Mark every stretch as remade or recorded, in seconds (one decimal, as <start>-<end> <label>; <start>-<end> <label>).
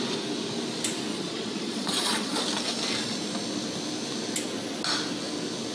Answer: 0.0-1.1 recorded; 1.1-2.4 remade; 2.4-5.7 recorded